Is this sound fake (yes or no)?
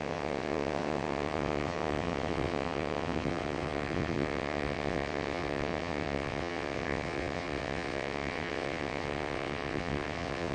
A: yes